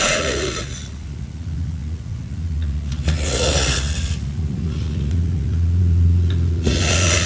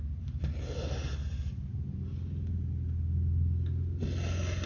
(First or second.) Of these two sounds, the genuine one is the second